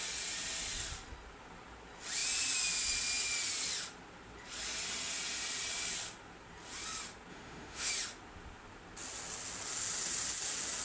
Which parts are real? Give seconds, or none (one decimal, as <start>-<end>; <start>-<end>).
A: 0.0-7.3; 7.9-10.8